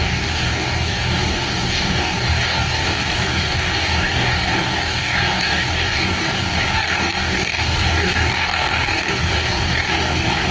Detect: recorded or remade remade